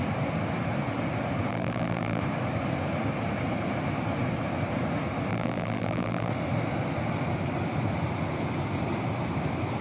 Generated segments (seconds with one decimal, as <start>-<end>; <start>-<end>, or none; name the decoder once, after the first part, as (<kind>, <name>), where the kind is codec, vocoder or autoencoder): 1.5-2.2 (vocoder, BigVGAN v2); 5.3-6.3